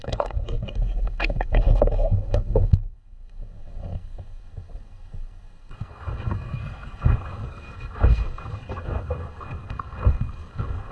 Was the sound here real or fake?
fake